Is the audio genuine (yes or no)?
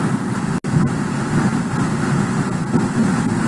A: yes